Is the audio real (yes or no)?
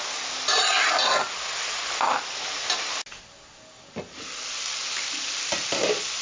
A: yes